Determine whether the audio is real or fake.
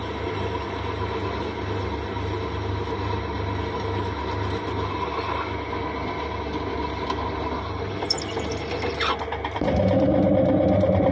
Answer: real